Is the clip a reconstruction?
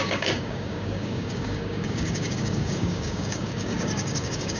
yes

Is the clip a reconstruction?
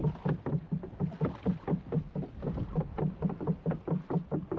no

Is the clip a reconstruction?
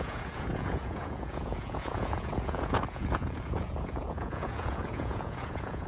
yes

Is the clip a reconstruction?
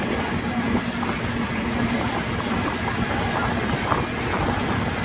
no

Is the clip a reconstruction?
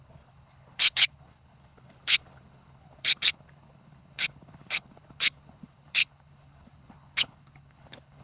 yes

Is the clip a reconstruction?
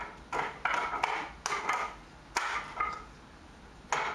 no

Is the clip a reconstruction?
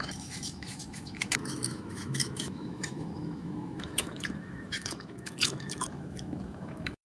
yes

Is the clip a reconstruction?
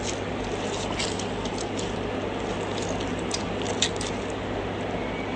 no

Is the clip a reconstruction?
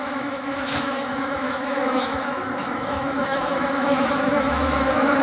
yes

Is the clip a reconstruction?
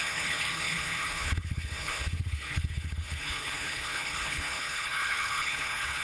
yes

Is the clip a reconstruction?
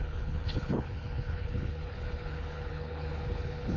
yes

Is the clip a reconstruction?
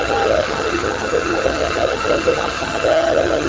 yes